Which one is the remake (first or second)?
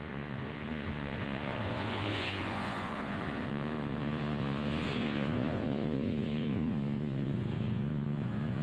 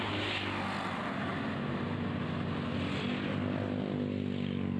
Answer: first